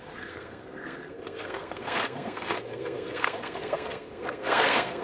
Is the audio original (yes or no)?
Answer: no